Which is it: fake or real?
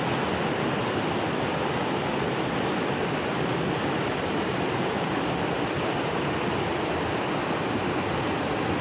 real